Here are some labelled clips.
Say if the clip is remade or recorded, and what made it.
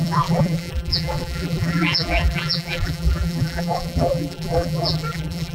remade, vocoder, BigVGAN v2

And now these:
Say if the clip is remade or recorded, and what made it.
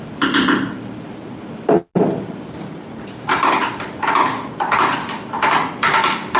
recorded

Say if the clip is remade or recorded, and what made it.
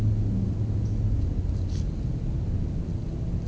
recorded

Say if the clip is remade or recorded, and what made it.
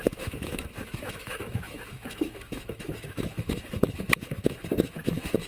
remade, autoencoder, DAC-VAE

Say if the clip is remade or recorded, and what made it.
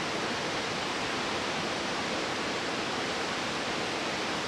recorded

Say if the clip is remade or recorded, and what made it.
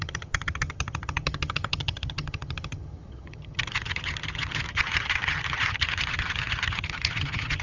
remade, vocoder, HiFi-GAN